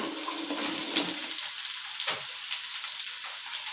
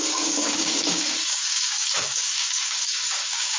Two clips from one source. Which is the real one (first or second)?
first